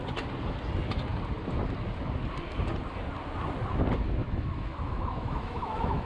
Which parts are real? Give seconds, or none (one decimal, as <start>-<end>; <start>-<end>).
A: 0.0-4.2